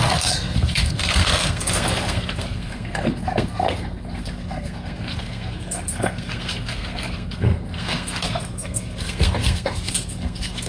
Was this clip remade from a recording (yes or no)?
yes